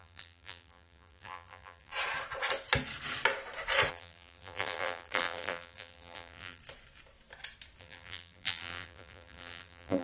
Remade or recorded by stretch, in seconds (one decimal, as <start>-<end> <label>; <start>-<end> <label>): 0.0-1.9 remade; 1.9-3.9 recorded; 3.9-6.6 remade; 6.6-7.8 recorded; 7.8-10.0 remade